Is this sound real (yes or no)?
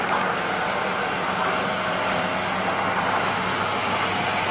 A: yes